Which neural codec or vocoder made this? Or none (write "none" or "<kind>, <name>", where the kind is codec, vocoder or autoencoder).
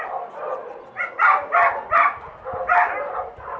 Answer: none